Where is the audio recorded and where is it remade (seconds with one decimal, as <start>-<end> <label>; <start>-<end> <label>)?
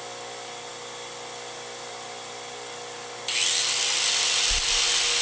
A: 0.0-5.2 recorded